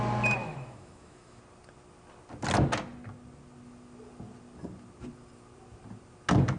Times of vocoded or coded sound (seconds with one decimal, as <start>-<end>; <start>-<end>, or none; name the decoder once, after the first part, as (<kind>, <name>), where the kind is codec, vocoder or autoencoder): 0.4-1.4 (autoencoder, DAC-VAE)

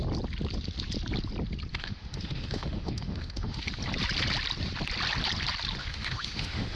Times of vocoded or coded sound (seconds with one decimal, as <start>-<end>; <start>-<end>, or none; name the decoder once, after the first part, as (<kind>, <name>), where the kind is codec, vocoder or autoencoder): 1.7-3.7 (autoencoder, DAC-VAE); 5.8-6.8

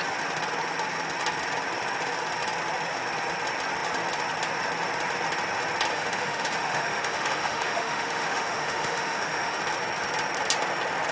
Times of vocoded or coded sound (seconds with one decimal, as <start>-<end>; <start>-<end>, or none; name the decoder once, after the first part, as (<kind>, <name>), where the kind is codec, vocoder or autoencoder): 5.9-9.6 (autoencoder, DAC-VAE)